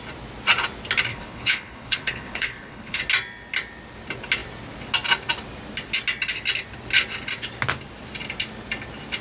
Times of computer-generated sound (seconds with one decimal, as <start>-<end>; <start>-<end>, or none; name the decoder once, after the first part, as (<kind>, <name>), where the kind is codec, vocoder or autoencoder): 1.1-3.0 (codec, HILCodec)